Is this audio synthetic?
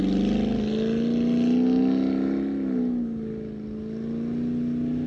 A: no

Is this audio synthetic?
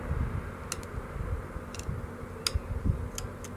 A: no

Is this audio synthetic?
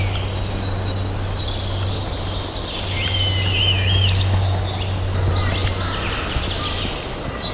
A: no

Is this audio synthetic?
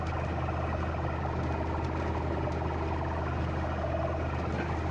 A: no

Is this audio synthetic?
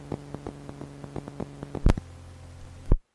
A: no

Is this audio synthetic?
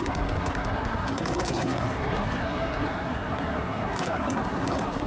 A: yes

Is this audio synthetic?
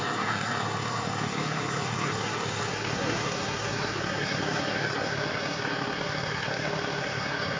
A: yes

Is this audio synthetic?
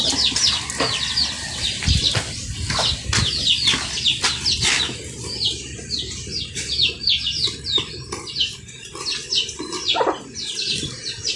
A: no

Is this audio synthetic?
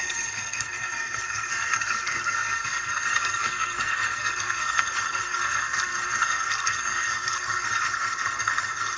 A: yes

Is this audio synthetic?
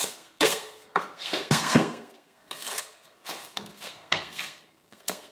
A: yes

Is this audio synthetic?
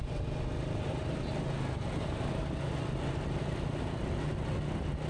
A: no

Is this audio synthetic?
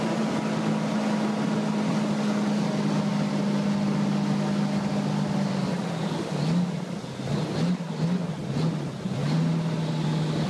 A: no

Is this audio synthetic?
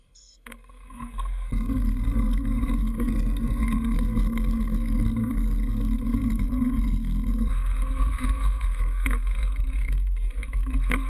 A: yes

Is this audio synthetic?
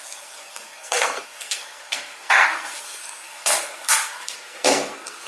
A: yes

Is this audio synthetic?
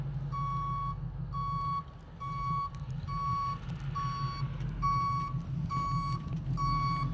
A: no